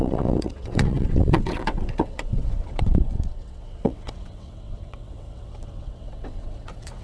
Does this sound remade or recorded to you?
remade